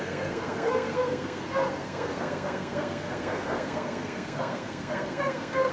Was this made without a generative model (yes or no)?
no